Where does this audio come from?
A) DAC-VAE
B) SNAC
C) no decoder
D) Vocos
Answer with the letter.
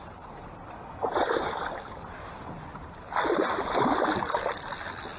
C